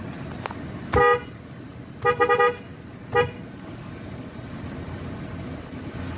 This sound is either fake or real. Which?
real